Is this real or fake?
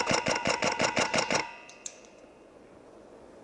fake